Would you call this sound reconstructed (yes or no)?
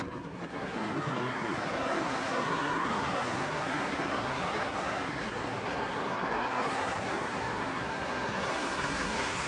yes